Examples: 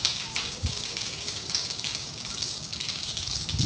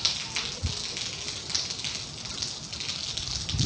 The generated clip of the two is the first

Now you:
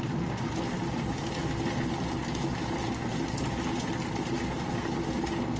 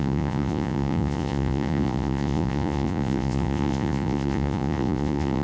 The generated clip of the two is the second